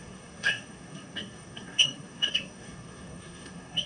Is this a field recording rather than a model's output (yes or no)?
no